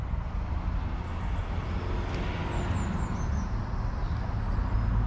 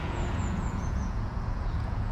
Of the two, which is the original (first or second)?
first